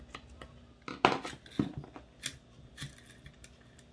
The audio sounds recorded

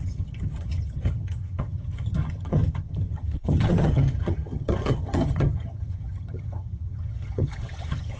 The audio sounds remade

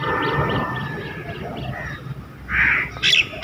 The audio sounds recorded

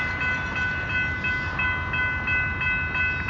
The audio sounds recorded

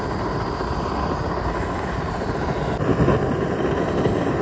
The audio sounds recorded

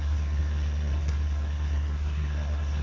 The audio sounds remade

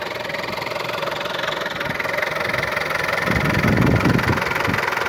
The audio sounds recorded